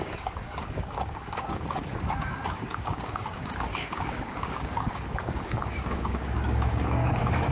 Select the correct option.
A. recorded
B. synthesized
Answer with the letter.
B